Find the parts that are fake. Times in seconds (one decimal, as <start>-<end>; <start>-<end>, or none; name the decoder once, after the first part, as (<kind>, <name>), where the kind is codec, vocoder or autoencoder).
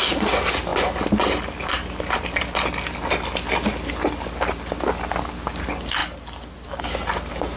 none